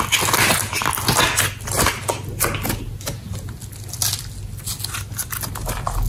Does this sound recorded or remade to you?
recorded